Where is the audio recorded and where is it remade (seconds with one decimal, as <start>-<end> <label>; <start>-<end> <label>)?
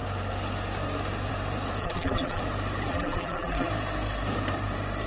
0.0-1.8 recorded; 1.8-2.4 remade; 2.4-2.9 recorded; 2.9-3.7 remade; 3.7-5.1 recorded